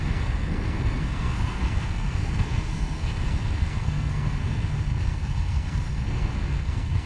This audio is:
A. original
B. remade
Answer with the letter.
B